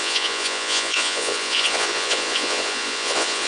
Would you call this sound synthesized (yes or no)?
yes